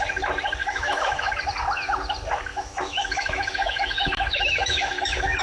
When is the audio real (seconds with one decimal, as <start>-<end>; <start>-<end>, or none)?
0.0-0.6; 1.3-2.5